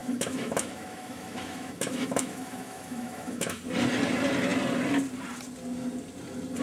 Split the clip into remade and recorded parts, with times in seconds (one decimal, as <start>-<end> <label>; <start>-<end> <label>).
0.0-3.6 remade; 3.6-6.6 recorded